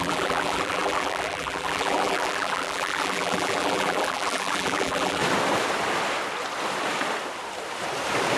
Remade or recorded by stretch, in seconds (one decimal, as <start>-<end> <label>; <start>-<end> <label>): 0.0-5.2 remade; 5.2-8.4 recorded